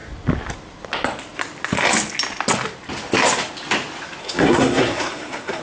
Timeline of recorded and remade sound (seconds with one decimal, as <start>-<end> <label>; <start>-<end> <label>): 0.0-4.2 recorded; 4.2-5.6 remade